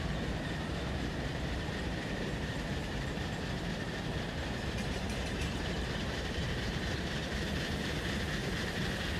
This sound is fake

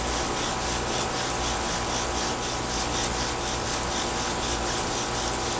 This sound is real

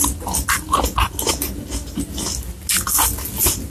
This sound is real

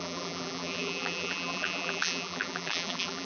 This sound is fake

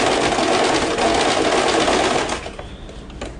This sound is real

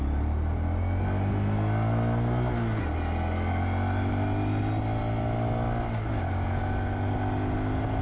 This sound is real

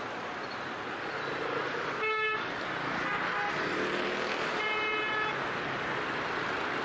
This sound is real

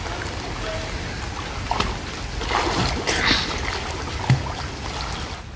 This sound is real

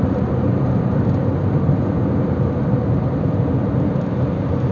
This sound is fake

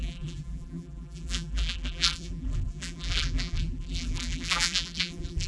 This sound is fake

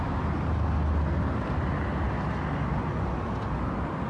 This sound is real